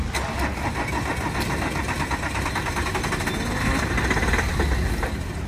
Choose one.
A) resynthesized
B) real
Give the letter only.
B